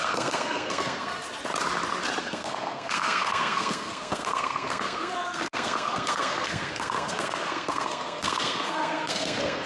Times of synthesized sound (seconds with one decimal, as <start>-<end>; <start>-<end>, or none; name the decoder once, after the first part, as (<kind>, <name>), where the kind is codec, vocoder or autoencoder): 0.0-1.1 (codec, SNAC); 2.2-9.7